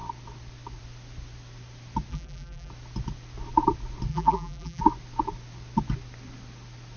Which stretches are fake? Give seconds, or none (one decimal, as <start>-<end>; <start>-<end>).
2.1-2.7; 4.1-4.8